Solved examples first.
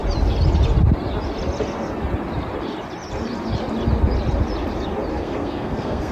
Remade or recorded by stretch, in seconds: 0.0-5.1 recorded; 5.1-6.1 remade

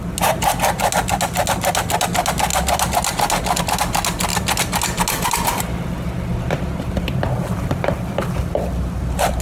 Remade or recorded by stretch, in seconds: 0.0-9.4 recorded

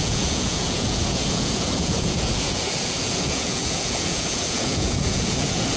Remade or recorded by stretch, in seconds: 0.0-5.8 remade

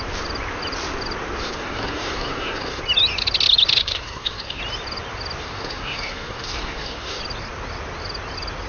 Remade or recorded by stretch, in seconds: 0.0-1.4 recorded; 1.4-2.8 remade; 2.8-3.8 recorded; 3.8-4.6 remade; 4.6-5.4 recorded; 5.4-7.2 remade; 7.2-8.7 recorded

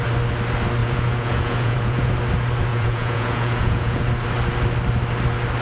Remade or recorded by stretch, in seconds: 0.0-0.8 recorded; 0.8-2.1 remade; 2.1-2.7 recorded; 2.7-4.0 remade; 4.0-5.6 recorded

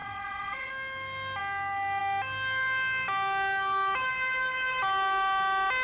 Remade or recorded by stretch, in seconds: 0.0-0.7 remade; 0.7-5.8 recorded

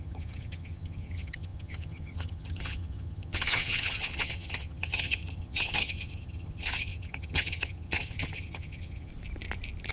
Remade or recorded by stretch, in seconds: 0.0-9.1 remade; 9.1-9.9 recorded

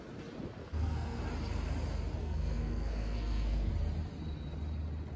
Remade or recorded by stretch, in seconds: 0.0-0.6 recorded; 0.6-1.2 remade; 1.2-2.2 recorded; 2.2-3.7 remade; 3.7-5.2 recorded